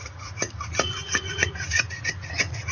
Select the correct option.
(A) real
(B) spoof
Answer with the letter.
B